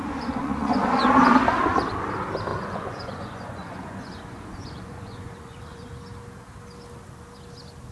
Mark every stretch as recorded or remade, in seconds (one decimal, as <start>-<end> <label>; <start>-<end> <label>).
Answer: 0.0-1.0 remade; 1.0-2.5 recorded; 2.5-5.9 remade; 5.9-7.9 recorded